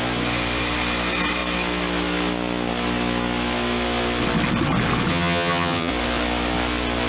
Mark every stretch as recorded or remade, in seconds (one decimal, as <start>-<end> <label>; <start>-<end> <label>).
0.0-5.1 recorded; 5.1-5.9 remade; 5.9-7.1 recorded

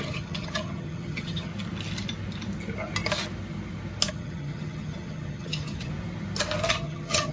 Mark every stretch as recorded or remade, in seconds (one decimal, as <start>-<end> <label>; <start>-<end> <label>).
0.0-1.5 remade; 1.5-4.1 recorded; 4.1-5.9 remade; 5.9-6.7 recorded; 6.7-7.3 remade

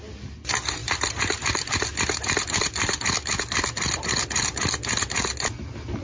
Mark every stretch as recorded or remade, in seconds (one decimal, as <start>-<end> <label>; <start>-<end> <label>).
0.0-6.0 recorded

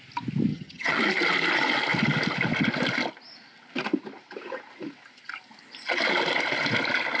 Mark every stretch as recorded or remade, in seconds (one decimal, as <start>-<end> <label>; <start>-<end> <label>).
0.0-0.5 recorded; 0.5-1.0 remade; 1.0-7.2 recorded

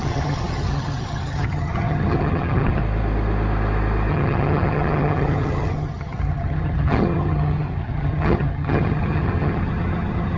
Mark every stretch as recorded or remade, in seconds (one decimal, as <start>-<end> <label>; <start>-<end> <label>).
0.0-2.8 remade; 2.8-4.1 recorded; 4.1-10.4 remade

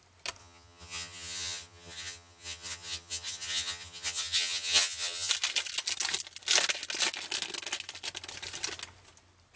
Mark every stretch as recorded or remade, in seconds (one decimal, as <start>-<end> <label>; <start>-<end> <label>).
0.0-0.4 recorded; 0.4-5.3 remade; 5.3-9.6 recorded

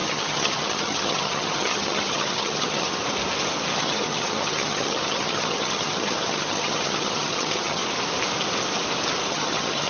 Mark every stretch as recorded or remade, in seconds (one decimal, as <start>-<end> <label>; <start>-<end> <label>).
0.0-3.0 remade; 3.0-3.8 recorded; 3.8-7.8 remade; 7.8-9.3 recorded; 9.3-9.9 remade